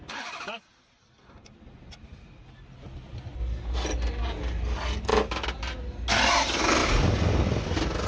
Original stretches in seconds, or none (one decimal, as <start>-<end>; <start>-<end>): 0.0-8.1